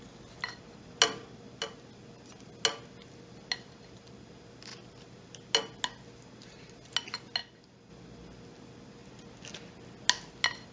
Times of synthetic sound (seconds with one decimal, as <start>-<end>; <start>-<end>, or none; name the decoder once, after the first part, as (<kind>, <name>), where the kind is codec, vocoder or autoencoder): none